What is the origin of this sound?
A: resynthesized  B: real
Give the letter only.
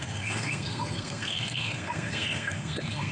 A